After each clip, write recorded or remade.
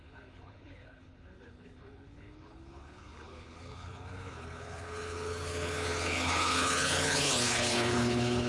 remade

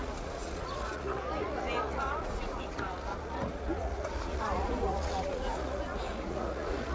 remade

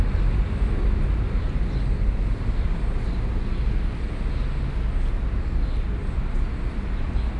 recorded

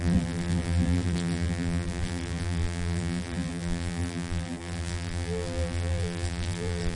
remade